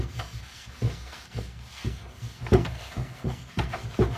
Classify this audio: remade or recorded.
remade